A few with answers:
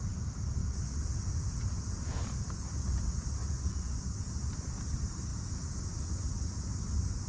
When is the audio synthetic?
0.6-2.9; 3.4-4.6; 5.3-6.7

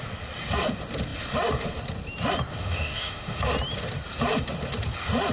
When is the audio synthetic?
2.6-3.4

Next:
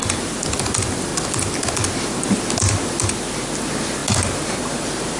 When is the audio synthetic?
none

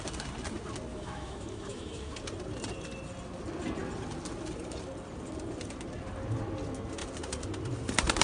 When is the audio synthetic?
0.9-2.1

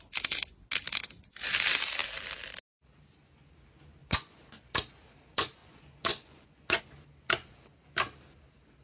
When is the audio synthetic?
4.0-4.6; 5.6-6.8

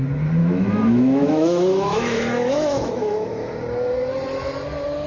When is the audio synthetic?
0.4-3.5

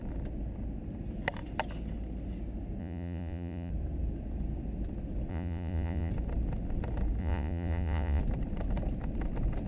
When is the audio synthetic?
2.8-3.7; 5.3-6.1; 7.2-8.2

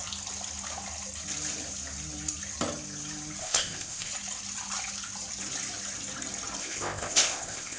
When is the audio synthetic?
3.4-4.1; 6.6-7.8